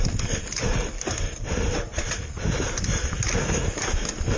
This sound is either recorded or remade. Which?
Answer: recorded